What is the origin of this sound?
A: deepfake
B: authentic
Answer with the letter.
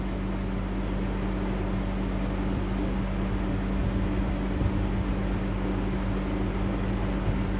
B